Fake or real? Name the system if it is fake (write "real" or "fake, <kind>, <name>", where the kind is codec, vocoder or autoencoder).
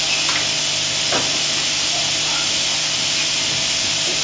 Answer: real